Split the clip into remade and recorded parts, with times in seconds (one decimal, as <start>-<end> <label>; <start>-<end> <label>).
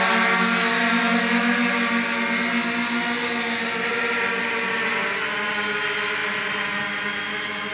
0.0-7.7 recorded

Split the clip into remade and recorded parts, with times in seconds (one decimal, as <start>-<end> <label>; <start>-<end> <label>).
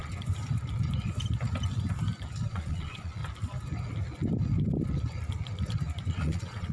0.0-2.5 recorded; 2.5-3.2 remade; 3.2-6.1 recorded; 6.1-6.7 remade